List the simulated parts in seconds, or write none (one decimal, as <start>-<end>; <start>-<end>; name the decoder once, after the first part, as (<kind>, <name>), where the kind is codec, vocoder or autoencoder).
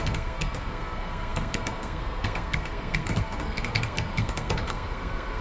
0.0-5.4 (codec, SNAC)